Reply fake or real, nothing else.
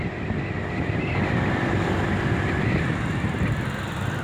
real